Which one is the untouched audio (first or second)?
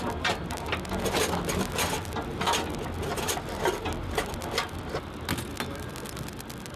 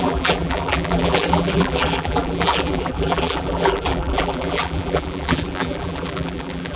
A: first